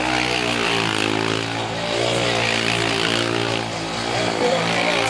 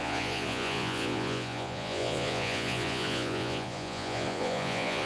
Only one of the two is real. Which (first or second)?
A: first